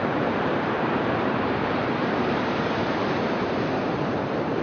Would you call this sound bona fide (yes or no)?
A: no